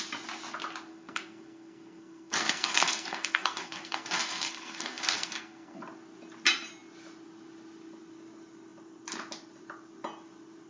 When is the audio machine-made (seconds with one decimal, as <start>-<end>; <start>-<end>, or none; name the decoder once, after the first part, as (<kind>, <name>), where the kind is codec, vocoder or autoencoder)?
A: 0.9-5.8 (codec, SNAC)